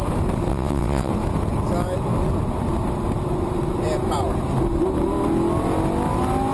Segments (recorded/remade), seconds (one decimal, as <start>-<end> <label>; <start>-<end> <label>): 0.0-0.5 recorded; 0.5-1.1 remade; 1.1-6.5 recorded